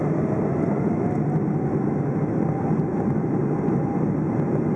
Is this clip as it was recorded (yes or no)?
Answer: yes